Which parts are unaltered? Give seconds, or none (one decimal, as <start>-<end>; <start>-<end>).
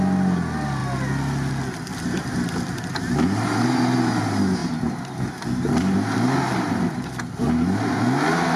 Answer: 0.0-8.6